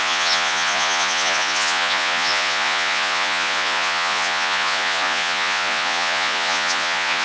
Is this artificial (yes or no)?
yes